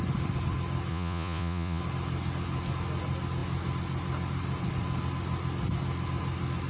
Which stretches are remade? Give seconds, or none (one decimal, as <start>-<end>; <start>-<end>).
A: 0.9-1.8